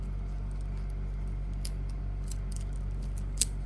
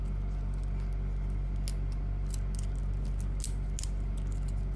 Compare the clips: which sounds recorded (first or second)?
second